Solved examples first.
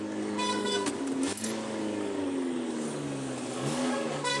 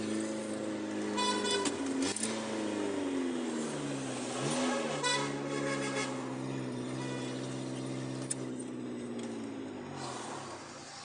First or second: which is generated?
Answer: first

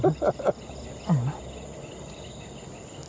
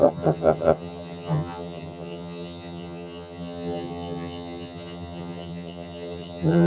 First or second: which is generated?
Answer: second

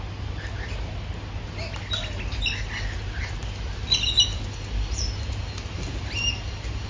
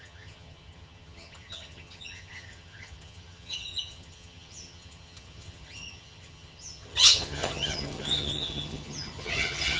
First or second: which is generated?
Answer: second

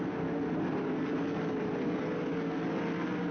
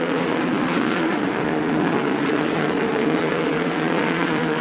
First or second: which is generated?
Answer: second